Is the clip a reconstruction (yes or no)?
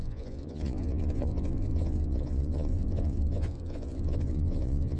yes